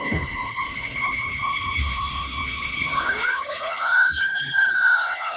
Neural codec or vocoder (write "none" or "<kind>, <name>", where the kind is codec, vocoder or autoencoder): codec, HILCodec